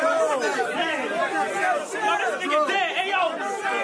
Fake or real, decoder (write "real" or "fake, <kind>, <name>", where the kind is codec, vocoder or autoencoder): real